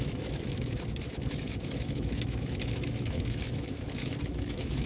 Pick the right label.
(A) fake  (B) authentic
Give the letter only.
A